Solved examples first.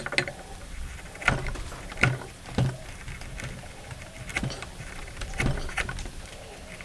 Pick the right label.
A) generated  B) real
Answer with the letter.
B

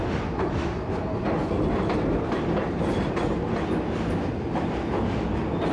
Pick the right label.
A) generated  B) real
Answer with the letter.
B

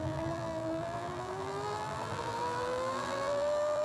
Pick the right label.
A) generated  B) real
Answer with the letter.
A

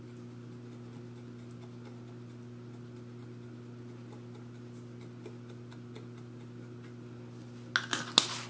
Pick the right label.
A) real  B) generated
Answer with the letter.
A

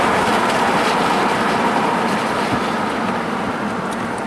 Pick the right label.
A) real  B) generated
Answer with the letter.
A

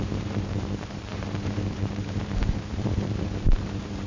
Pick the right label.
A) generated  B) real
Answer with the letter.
A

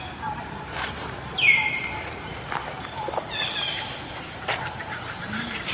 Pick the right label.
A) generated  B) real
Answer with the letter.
A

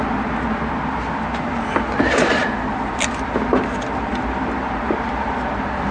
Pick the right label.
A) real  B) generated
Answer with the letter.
A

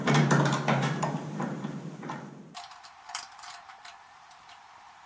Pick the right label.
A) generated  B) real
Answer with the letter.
A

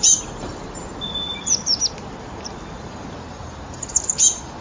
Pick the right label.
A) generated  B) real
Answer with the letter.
A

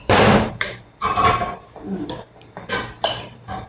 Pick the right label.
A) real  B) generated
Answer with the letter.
B